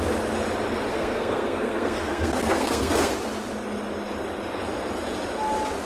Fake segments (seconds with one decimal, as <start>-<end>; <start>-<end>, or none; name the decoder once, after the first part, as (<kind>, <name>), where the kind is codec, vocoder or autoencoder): 0.9-3.1 (codec, SNAC)